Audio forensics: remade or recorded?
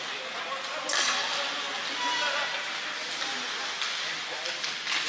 recorded